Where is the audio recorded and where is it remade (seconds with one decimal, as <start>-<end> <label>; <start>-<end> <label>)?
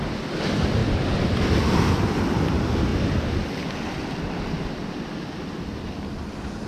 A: 0.0-0.8 recorded; 0.8-1.6 remade; 1.6-6.7 recorded